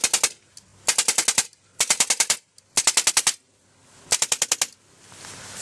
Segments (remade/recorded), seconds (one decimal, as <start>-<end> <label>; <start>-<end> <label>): 0.0-5.6 recorded